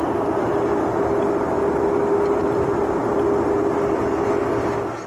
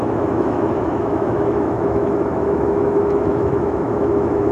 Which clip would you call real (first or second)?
first